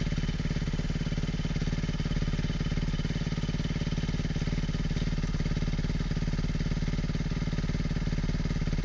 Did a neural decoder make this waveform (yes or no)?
no